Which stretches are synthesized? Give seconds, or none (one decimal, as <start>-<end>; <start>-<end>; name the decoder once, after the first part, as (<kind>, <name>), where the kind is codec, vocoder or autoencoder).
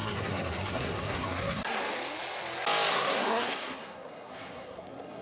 0.0-1.8 (codec, SNAC); 2.9-5.2